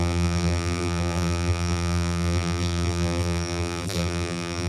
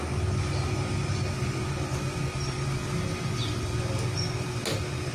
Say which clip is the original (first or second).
second